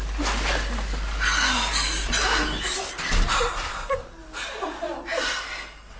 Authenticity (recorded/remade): recorded